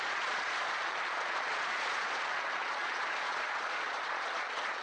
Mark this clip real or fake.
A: fake